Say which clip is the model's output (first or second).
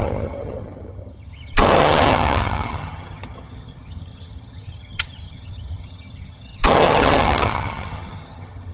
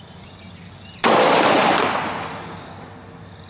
first